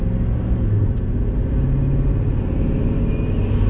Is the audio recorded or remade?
recorded